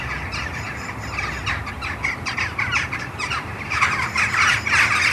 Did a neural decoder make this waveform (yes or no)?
no